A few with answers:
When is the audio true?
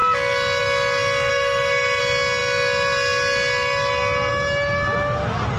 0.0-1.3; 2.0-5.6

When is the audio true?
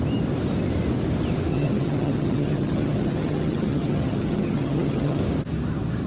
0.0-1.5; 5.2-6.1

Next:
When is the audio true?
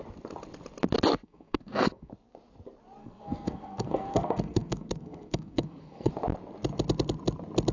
0.0-1.1; 2.1-3.0; 6.1-7.7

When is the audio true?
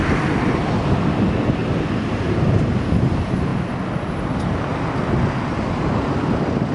0.0-6.7